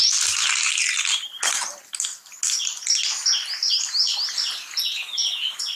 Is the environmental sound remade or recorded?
recorded